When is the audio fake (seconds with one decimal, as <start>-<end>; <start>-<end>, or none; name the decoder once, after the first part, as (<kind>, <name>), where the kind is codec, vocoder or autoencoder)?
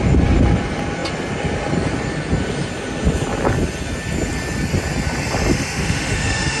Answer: 5.5-6.6 (autoencoder, DAC-VAE)